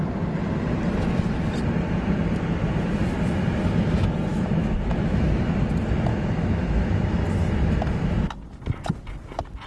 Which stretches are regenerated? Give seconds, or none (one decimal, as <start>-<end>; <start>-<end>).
4.3-5.5; 6.1-6.9